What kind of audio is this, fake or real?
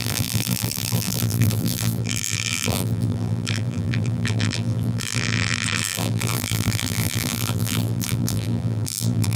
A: fake